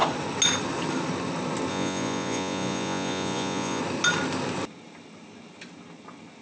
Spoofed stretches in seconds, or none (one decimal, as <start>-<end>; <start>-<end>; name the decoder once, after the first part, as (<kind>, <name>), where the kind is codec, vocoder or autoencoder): 1.7-3.8 (vocoder, Vocos)